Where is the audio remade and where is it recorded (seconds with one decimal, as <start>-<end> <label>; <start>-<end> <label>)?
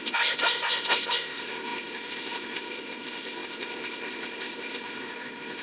0.0-5.6 remade